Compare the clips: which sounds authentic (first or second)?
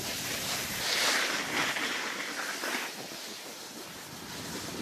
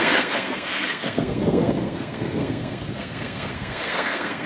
first